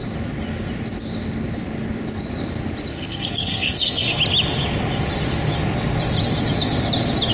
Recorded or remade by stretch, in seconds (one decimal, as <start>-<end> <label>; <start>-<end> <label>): 0.0-2.9 recorded; 2.9-4.2 remade; 4.2-7.3 recorded